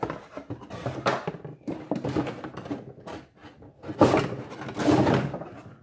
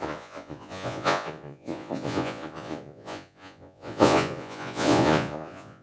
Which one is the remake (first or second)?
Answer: second